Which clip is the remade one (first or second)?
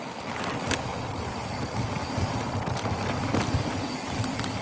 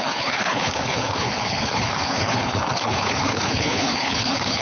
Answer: second